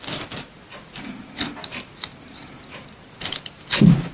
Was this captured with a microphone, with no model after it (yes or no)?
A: yes